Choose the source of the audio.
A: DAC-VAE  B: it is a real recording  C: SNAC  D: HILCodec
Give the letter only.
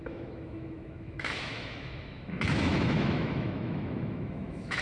A